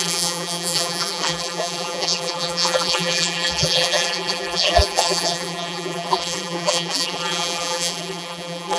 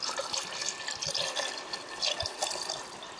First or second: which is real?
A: second